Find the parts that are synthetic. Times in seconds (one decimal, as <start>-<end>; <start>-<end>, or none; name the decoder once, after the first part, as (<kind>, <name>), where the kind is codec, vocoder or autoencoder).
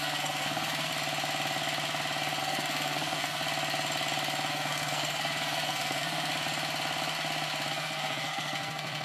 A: 0.0-0.9 (codec, SNAC); 2.4-3.4; 4.5-6.3; 7.7-9.0